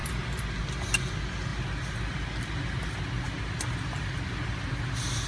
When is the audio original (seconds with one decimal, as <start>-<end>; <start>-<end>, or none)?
0.0-5.3